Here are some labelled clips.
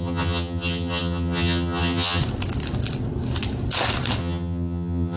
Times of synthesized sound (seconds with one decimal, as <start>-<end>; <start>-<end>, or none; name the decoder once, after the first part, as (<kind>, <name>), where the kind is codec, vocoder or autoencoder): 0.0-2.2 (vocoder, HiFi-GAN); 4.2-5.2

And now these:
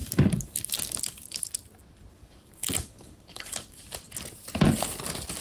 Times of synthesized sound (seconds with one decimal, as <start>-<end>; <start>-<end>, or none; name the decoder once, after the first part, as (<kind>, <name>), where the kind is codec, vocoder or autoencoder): 0.0-1.5 (codec, DAC); 2.1-3.8

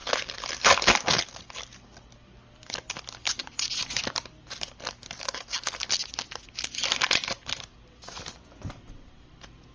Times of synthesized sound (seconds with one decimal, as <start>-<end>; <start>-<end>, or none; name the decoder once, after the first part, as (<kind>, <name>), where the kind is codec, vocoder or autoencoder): 3.4-4.0 (vocoder, Vocos)

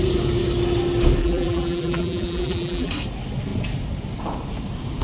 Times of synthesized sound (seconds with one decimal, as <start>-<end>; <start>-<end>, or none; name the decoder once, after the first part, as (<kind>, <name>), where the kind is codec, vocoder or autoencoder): 1.2-2.9 (vocoder, BigVGAN v2)

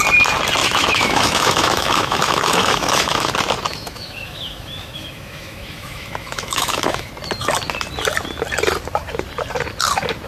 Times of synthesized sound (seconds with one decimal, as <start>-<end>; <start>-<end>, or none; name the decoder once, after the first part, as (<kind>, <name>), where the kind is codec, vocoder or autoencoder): 0.6-3.3 (autoencoder, DAC-VAE); 3.7-7.1

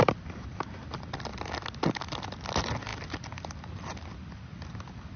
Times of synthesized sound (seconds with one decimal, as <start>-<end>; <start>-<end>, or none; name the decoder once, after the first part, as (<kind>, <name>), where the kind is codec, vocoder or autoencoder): 0.0-1.3 (vocoder, BigVGAN v2); 2.2-5.2

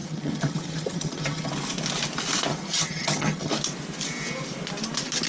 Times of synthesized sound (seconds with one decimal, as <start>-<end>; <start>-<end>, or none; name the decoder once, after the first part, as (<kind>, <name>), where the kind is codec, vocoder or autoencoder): 0.0-1.5 (vocoder, HiFi-GAN); 2.5-3.5

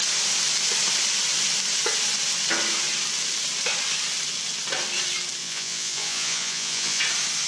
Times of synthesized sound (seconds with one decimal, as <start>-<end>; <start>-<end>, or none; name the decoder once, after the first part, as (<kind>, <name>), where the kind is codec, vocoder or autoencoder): 5.4-7.0 (vocoder, Vocos)